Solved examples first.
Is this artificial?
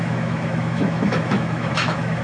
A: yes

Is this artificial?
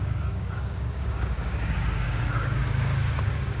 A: yes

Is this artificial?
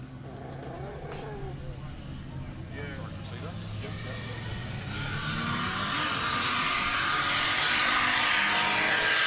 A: no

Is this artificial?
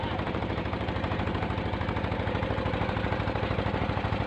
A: yes